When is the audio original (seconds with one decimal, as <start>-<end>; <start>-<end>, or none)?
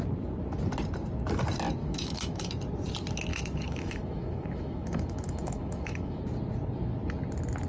0.0-1.8; 2.5-3.3; 6.2-7.7